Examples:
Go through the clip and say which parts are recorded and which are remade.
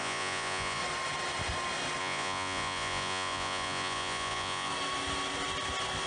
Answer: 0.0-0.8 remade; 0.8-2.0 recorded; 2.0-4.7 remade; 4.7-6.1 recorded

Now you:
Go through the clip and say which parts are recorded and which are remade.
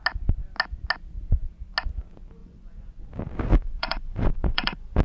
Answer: 0.0-2.4 recorded; 2.4-2.9 remade; 2.9-3.5 recorded; 3.5-5.0 remade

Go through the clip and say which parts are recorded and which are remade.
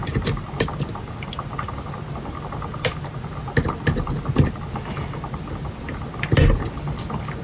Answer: 0.0-7.4 recorded